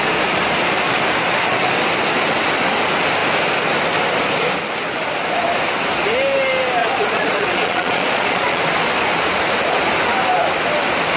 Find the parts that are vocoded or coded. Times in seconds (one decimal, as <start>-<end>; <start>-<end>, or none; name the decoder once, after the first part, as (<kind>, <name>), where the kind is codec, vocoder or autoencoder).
6.8-8.6 (vocoder, Vocos)